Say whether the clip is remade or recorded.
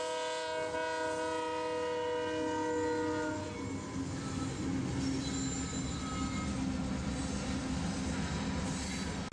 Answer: recorded